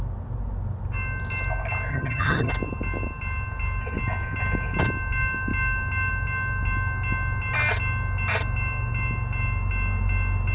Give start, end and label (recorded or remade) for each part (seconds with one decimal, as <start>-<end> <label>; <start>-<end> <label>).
0.0-1.9 recorded; 1.9-2.5 remade; 2.5-10.5 recorded